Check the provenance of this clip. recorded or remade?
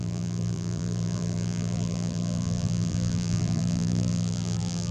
remade